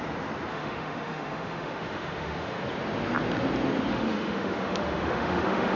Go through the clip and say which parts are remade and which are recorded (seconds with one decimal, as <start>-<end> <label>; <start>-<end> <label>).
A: 0.0-0.5 recorded; 0.5-2.6 remade; 2.6-3.9 recorded; 3.9-5.8 remade